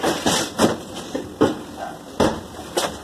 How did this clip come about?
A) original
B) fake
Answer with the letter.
A